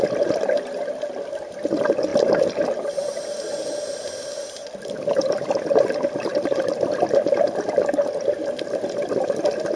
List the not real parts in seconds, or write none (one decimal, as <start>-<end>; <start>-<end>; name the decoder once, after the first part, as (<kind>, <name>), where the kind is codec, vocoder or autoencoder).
none